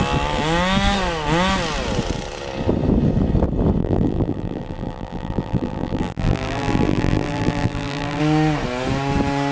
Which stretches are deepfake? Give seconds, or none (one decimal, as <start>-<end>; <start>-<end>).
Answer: 3.8-8.2